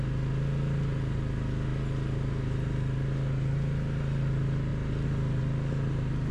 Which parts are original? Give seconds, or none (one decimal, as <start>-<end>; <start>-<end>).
0.0-6.3

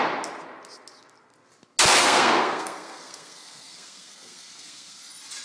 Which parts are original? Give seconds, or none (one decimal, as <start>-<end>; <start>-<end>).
0.0-2.0; 5.0-5.4

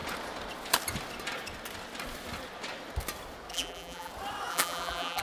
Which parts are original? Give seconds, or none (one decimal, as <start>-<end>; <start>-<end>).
0.0-3.5; 4.1-4.5

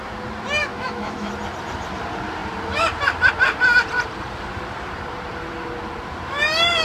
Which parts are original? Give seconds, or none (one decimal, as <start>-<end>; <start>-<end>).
0.0-0.6; 1.3-6.8

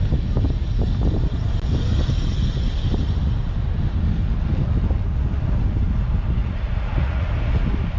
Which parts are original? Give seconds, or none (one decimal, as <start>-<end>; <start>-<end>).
0.0-6.4; 7.3-8.0

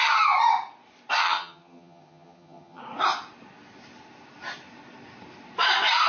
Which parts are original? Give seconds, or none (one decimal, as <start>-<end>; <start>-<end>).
0.0-1.2; 2.8-6.1

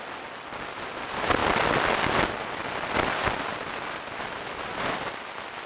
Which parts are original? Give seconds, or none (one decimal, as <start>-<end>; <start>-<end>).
0.0-5.7